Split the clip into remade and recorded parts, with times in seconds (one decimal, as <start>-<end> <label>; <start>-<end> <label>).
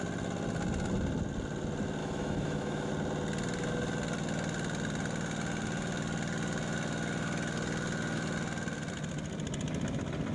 0.0-2.0 recorded; 2.0-2.9 remade; 2.9-10.3 recorded